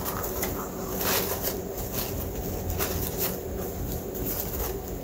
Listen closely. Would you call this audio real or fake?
real